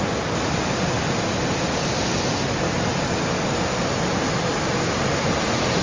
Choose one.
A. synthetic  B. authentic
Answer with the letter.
B